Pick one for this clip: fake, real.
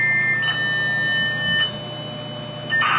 real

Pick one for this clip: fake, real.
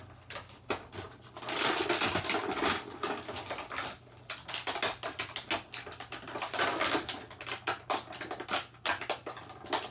real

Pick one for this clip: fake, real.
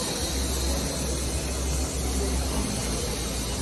real